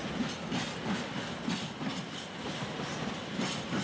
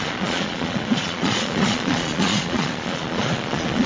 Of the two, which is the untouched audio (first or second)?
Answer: first